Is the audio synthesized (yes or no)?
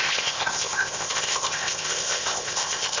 yes